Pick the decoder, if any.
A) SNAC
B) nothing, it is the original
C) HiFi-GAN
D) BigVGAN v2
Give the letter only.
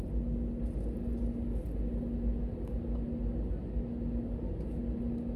B